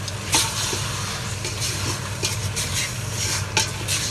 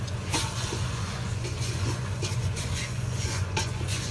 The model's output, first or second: second